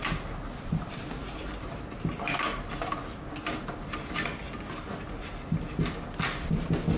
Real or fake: real